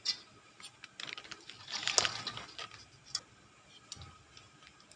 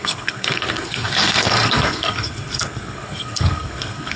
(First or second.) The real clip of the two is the first